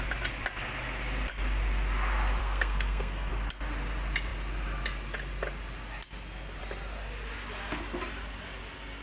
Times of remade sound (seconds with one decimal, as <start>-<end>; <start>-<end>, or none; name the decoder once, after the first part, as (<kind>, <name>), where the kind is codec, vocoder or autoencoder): 2.4-3.3 (codec, SNAC)